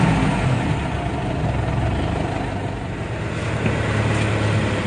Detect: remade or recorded recorded